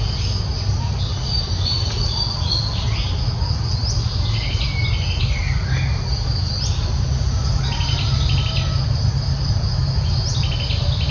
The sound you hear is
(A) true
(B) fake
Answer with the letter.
A